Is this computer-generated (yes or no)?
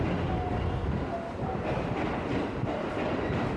no